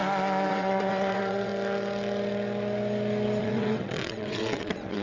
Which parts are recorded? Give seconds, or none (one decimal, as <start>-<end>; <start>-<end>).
0.0-0.5; 1.5-3.4